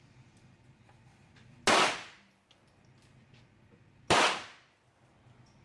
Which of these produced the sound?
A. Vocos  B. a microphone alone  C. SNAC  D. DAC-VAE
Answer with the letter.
B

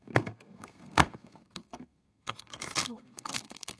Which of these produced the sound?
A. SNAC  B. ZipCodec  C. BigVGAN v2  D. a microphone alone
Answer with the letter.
A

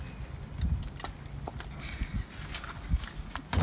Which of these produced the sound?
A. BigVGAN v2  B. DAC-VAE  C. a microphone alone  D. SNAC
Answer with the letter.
C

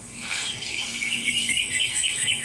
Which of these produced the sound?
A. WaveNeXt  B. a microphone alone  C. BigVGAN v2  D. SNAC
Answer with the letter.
D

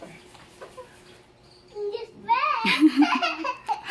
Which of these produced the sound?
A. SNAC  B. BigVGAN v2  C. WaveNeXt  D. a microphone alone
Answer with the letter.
D